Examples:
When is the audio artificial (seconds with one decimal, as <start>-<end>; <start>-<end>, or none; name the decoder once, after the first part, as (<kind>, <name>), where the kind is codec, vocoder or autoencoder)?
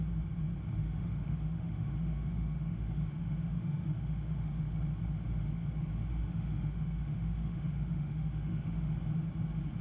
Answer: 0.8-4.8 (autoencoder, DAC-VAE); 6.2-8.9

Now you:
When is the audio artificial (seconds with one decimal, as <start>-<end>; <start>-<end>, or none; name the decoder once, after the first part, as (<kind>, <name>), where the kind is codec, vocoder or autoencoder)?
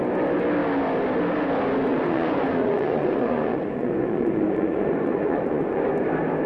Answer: 1.9-5.8 (vocoder, Vocos)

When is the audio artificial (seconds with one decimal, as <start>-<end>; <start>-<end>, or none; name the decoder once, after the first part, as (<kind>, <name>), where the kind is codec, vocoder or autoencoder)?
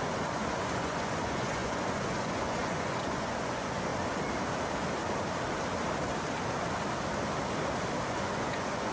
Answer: 0.0-3.9 (vocoder, Vocos); 8.1-8.9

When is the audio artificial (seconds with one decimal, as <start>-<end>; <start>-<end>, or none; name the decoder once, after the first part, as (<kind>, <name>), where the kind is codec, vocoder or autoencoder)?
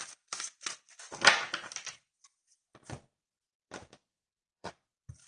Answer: 4.1-4.7 (codec, SNAC)